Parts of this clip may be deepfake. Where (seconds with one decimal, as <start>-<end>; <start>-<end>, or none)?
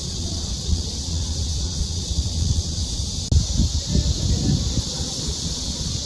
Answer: 0.0-2.8; 4.8-6.1